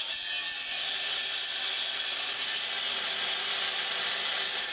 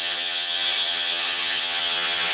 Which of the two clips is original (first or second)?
first